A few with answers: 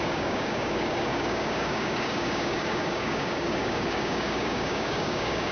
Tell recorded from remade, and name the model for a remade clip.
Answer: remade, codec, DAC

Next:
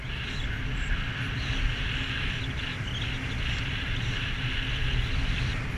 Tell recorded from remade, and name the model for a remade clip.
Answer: recorded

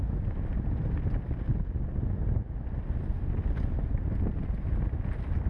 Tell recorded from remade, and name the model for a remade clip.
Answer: recorded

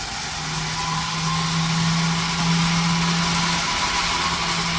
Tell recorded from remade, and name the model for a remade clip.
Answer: recorded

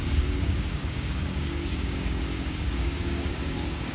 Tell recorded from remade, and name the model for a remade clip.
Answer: remade, codec, DAC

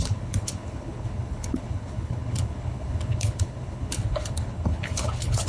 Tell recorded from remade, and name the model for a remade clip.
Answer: remade, codec, HILCodec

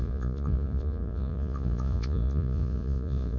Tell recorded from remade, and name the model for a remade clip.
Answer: remade, vocoder, Vocos